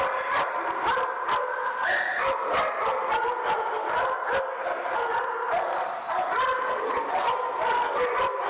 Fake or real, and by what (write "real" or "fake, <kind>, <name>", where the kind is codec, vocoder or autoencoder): real